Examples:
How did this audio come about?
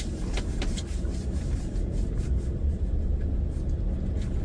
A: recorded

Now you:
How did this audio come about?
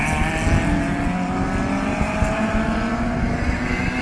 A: recorded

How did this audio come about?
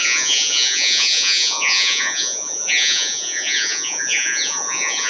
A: remade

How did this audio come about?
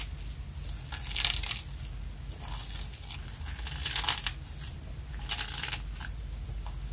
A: recorded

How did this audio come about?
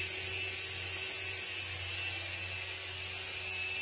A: recorded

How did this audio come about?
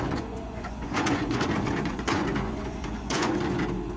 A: remade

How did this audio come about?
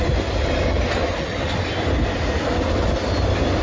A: recorded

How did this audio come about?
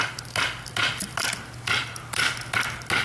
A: recorded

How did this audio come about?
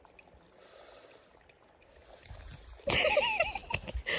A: recorded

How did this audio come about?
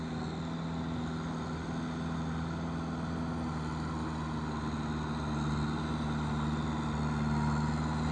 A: recorded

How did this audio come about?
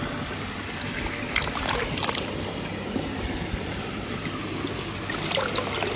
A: recorded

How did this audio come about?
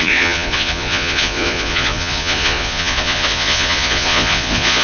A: remade